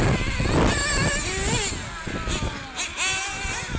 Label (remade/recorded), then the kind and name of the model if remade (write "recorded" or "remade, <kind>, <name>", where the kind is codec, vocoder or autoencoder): recorded